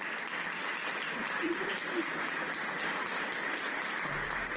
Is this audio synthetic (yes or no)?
no